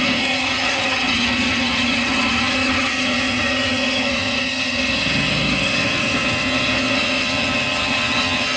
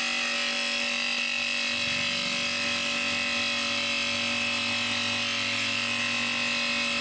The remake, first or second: first